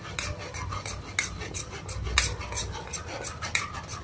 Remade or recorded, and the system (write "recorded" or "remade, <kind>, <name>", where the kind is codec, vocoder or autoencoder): recorded